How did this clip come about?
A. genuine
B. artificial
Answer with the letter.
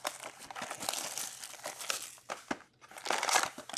A